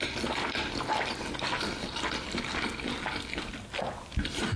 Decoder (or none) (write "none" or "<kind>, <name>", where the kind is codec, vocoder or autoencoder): none